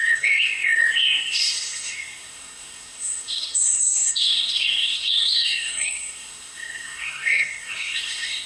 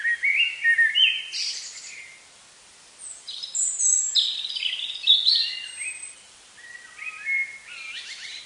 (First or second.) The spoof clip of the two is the first